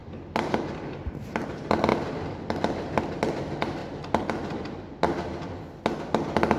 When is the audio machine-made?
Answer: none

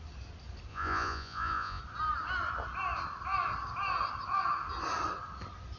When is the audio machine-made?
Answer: 0.7-1.8 (vocoder, Vocos)

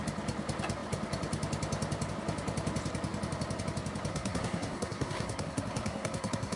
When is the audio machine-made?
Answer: 4.1-6.6 (codec, SNAC)

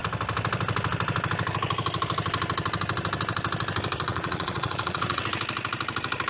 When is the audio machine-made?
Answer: 4.1-5.2 (vocoder, Vocos)

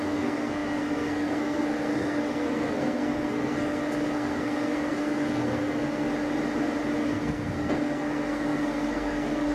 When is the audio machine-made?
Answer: 0.0-6.1 (codec, SNAC); 7.0-9.5

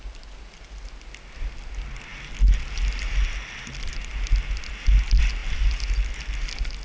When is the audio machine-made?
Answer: none